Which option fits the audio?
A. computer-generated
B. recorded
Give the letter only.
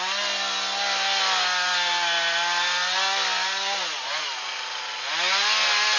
B